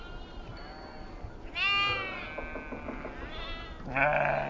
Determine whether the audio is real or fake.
real